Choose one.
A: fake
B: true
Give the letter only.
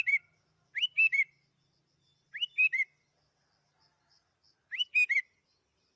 B